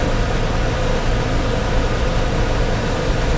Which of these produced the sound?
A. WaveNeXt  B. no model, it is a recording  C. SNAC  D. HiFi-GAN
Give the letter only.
B